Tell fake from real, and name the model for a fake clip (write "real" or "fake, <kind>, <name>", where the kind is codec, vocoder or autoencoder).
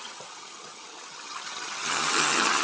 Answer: fake, vocoder, HiFi-GAN